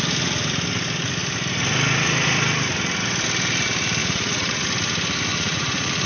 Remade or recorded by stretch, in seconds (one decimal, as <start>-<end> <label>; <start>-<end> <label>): 0.0-4.0 recorded; 4.0-4.6 remade; 4.6-5.3 recorded; 5.3-6.1 remade